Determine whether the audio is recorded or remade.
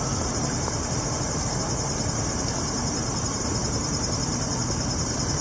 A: remade